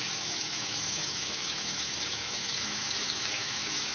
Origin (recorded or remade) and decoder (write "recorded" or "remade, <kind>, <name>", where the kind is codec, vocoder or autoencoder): remade, autoencoder, DAC-VAE